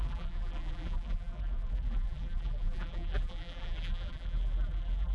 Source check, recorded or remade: remade